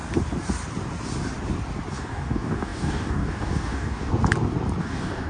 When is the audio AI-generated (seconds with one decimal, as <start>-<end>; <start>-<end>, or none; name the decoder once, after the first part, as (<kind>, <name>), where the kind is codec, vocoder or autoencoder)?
1.9-4.1 (codec, DAC); 4.8-5.3